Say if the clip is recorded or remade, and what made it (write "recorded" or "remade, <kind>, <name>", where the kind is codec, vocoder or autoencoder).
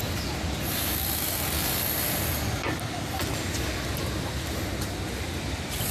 recorded